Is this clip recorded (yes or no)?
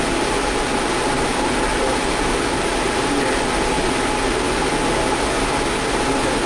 yes